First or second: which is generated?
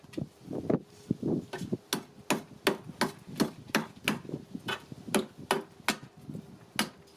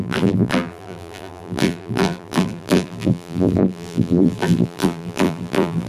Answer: second